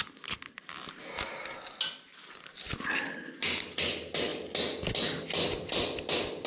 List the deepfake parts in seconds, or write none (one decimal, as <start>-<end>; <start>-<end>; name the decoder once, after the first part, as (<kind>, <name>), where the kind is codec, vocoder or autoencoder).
none